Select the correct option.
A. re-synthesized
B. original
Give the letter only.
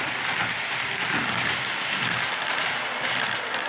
A